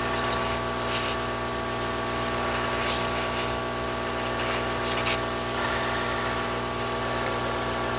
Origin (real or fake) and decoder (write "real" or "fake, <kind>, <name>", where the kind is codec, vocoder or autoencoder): real